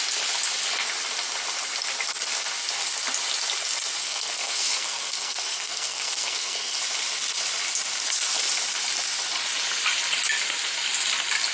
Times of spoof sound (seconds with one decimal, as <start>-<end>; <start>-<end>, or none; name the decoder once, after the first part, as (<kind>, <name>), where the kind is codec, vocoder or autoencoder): 4.0-6.8 (codec, SNAC)